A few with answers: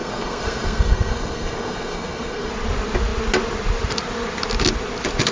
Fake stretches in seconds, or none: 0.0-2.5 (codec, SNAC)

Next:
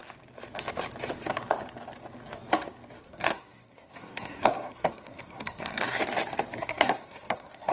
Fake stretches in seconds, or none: 3.0-6.0 (codec, SNAC); 6.6-7.7

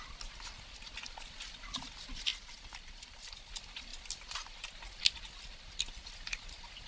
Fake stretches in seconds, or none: 2.3-3.5 (vocoder, BigVGAN v2)

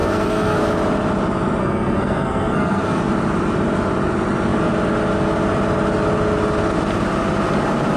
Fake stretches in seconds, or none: 0.0-0.6 (codec, SNAC); 1.6-3.0

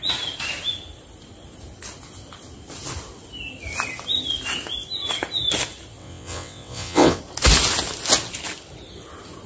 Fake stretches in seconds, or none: 6.0-7.2 (vocoder, WaveNeXt)

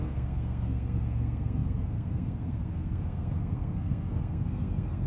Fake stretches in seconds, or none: 0.0-5.1 (codec, SNAC)